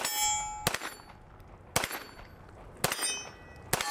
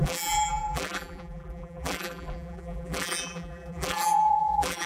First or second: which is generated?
second